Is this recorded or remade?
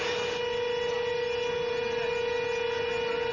recorded